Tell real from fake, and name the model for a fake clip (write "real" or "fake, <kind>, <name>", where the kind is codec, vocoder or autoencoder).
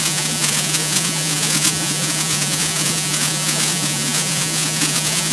fake, vocoder, Vocos